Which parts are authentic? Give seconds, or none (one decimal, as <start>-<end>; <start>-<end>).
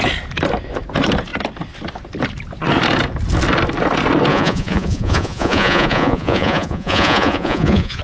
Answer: 0.0-4.3